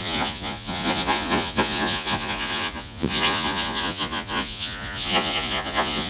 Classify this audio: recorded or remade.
remade